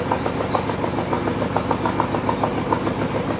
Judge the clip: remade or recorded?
recorded